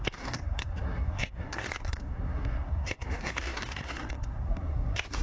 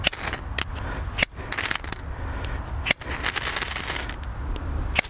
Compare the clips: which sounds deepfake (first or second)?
first